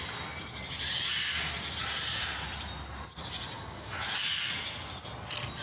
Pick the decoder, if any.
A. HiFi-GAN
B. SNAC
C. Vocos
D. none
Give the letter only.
D